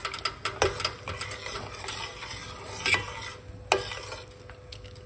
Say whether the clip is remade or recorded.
recorded